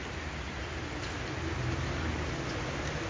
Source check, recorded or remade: recorded